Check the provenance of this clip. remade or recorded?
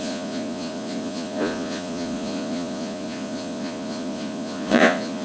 remade